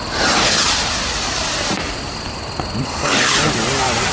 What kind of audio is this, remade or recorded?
recorded